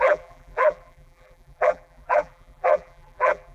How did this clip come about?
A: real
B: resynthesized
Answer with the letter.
B